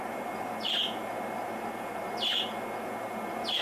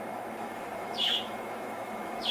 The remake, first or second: second